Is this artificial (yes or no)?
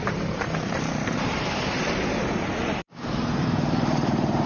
yes